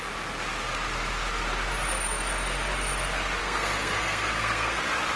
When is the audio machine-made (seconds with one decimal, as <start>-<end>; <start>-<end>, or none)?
3.4-4.8